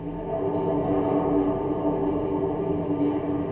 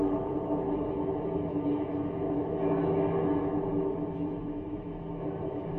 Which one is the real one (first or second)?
first